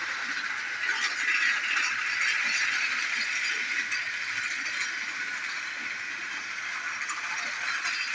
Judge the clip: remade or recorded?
recorded